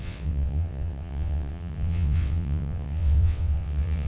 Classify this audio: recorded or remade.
remade